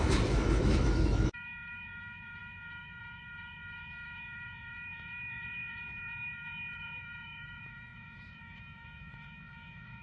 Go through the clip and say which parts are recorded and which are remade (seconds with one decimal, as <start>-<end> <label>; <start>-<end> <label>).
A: 0.0-10.0 remade